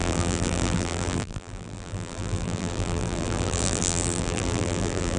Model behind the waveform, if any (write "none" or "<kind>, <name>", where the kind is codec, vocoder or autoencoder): vocoder, BigVGAN v2